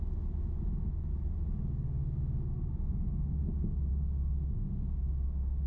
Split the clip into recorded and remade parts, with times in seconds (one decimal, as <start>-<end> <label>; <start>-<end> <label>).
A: 0.0-2.0 recorded; 2.0-3.5 remade; 3.5-3.9 recorded; 3.9-5.7 remade